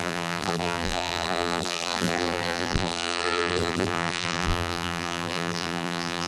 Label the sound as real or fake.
fake